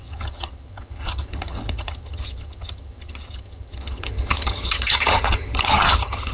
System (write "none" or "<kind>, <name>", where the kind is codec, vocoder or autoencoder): vocoder, HiFi-GAN